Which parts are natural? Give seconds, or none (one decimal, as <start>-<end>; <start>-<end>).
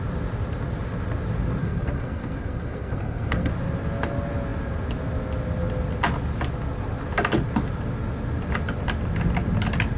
0.0-1.6; 3.5-10.0